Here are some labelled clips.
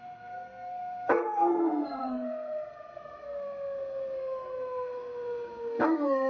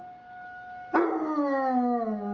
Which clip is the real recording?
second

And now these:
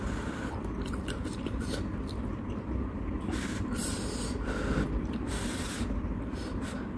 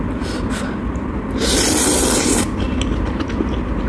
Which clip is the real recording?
second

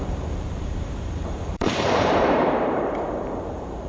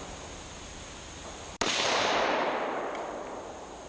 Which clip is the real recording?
second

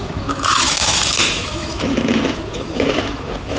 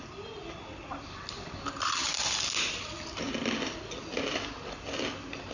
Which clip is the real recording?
second